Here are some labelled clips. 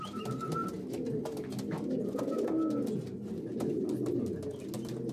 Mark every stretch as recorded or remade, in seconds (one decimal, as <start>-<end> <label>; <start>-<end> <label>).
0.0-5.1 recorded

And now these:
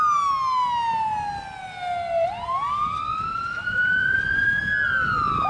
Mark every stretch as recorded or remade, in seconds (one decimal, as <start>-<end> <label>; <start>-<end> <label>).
0.0-4.0 recorded; 4.0-4.5 remade; 4.5-5.5 recorded

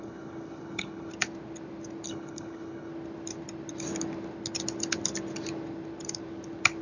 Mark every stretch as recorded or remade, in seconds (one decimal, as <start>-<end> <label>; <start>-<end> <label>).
0.0-1.1 remade; 1.1-2.1 recorded; 2.1-2.9 remade; 2.9-6.8 recorded